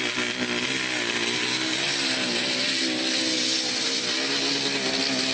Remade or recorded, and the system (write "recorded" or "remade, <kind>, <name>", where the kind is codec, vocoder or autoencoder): recorded